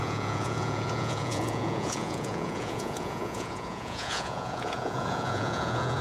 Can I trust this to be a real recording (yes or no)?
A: no